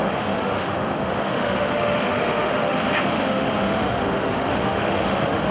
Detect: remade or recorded remade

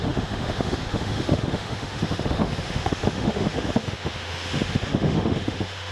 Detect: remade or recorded remade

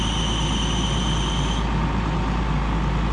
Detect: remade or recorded recorded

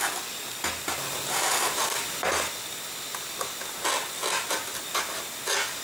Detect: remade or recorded recorded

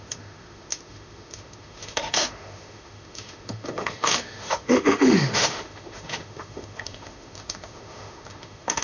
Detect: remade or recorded remade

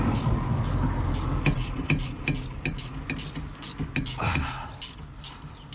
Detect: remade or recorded recorded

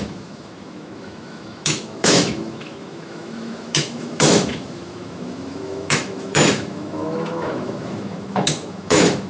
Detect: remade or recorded remade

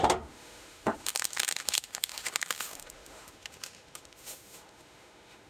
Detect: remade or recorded remade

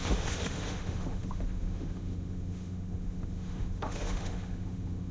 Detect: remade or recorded remade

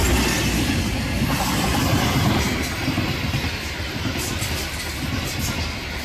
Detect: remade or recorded recorded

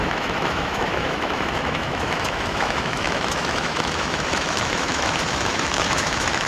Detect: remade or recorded remade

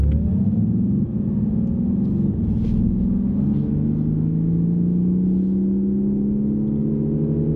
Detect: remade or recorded recorded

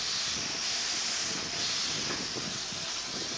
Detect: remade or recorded recorded